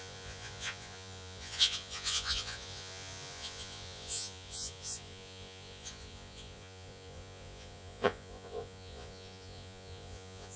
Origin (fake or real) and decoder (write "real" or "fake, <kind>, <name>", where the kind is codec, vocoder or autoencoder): fake, vocoder, Vocos